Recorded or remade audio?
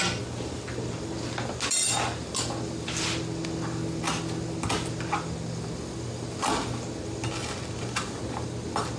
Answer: recorded